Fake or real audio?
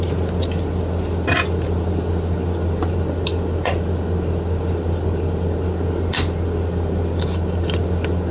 real